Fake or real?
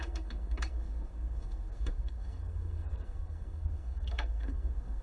fake